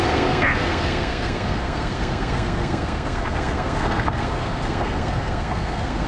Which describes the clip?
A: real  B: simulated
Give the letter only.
B